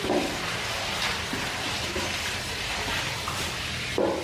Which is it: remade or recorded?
recorded